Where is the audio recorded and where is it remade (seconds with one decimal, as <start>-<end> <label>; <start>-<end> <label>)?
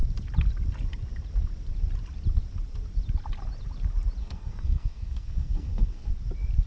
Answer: 0.0-4.2 recorded; 4.2-6.1 remade; 6.1-6.7 recorded